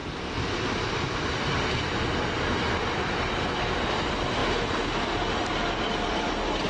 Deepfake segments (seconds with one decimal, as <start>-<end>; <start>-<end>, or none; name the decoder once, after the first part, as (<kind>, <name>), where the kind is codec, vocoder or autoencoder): none